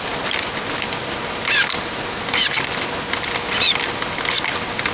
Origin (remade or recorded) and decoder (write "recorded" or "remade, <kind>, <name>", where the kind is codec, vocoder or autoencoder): recorded